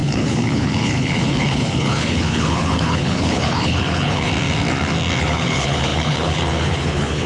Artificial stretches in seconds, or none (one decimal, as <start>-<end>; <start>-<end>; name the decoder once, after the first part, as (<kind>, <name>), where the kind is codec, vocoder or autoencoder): 0.0-4.3 (codec, HILCodec); 5.2-7.3